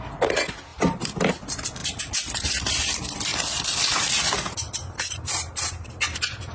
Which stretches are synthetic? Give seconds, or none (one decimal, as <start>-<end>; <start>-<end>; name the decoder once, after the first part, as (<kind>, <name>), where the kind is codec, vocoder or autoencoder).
0.7-1.3 (vocoder, BigVGAN v2); 3.3-5.9

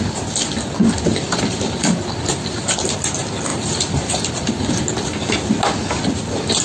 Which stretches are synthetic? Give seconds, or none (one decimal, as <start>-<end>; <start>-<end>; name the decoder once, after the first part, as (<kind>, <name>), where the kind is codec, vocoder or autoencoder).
1.1-2.8 (vocoder, BigVGAN v2); 3.5-4.7

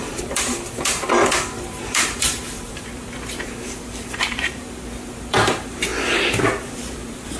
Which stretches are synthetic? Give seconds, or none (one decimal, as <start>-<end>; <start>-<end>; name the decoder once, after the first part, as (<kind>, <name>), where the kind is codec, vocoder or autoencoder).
0.0-5.9 (vocoder, BigVGAN v2); 6.8-7.4

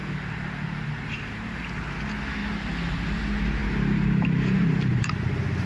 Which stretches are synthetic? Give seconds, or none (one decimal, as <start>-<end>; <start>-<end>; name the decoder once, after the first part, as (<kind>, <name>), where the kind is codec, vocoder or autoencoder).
0.0-1.6 (vocoder, BigVGAN v2); 2.4-3.2; 3.6-5.1

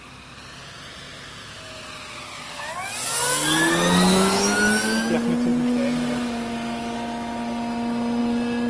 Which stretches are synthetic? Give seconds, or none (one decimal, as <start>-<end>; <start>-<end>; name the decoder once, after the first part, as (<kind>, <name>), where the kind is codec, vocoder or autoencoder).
none